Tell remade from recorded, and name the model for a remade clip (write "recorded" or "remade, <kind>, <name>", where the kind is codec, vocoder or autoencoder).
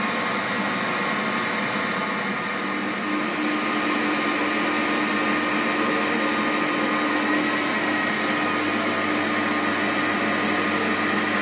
recorded